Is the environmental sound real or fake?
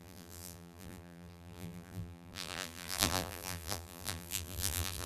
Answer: fake